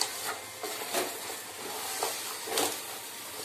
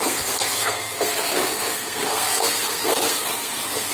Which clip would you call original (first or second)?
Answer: first